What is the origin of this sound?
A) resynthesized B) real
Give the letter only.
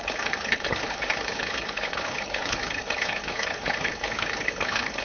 A